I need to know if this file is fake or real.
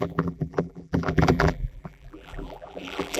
fake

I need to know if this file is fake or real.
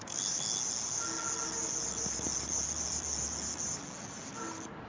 real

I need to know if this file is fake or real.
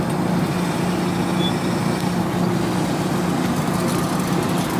real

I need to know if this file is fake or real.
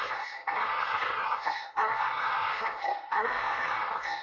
fake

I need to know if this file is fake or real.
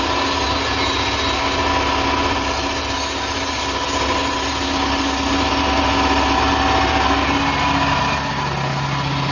real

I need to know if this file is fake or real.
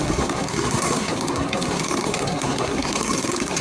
fake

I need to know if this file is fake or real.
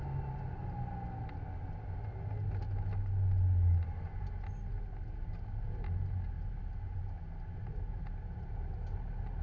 real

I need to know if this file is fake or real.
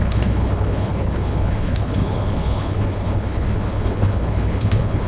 fake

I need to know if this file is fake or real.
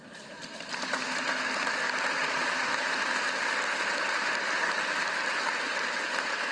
real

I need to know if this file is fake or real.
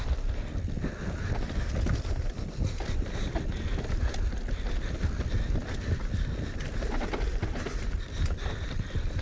real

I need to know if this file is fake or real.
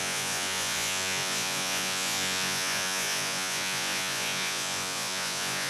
fake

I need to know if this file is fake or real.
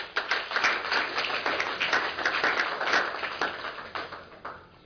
real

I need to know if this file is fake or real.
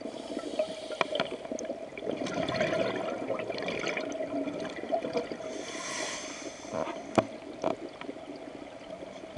real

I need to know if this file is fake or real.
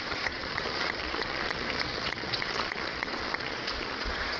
fake